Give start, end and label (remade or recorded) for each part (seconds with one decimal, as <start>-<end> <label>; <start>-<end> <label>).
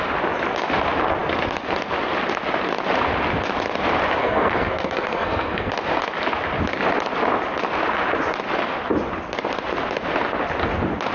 0.0-4.2 recorded; 4.2-5.7 remade; 5.7-11.1 recorded